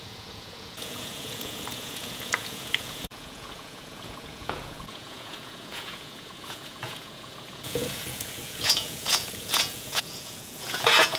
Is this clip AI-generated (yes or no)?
yes